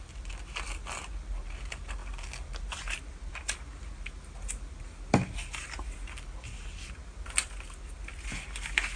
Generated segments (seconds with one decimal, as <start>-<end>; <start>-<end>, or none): none